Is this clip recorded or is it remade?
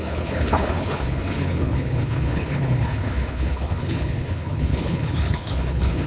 remade